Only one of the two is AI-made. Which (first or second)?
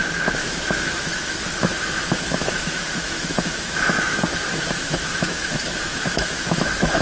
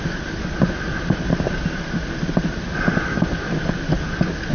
first